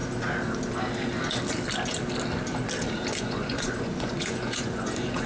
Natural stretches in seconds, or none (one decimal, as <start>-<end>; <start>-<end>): 0.0-3.2